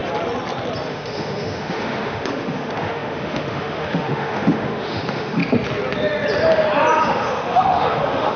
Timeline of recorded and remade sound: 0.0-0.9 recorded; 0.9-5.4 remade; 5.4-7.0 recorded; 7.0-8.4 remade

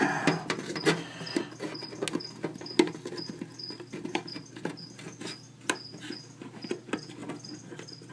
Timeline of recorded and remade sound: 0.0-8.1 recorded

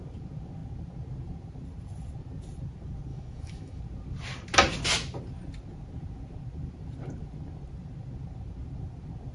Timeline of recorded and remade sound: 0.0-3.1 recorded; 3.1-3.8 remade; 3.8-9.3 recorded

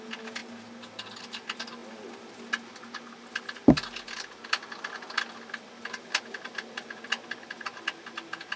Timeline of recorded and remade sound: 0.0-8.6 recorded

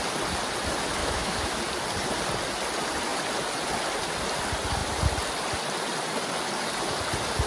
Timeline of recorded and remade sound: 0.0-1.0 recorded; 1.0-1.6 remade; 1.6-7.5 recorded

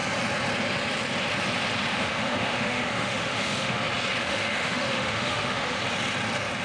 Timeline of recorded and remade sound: 0.0-1.9 recorded; 1.9-3.8 remade; 3.8-4.2 recorded; 4.2-5.8 remade; 5.8-6.6 recorded

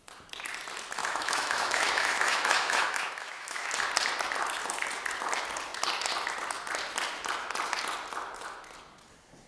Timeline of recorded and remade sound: 0.0-1.0 recorded; 1.0-3.7 remade; 3.7-9.5 recorded